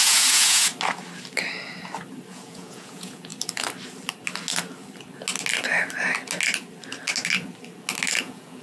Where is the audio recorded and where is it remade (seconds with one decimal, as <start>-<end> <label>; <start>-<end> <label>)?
0.0-0.7 remade; 0.7-2.3 recorded; 2.3-3.3 remade; 3.3-8.2 recorded; 8.2-8.6 remade